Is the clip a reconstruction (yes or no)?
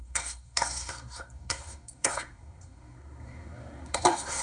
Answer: yes